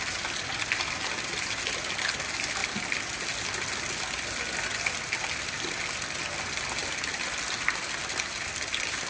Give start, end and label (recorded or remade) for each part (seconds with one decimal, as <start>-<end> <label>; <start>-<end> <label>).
0.0-9.1 recorded